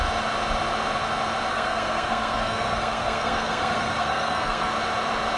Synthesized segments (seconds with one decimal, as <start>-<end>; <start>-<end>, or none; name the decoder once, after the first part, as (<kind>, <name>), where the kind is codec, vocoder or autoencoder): 1.5-4.7 (codec, SNAC)